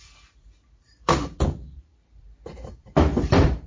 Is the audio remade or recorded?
remade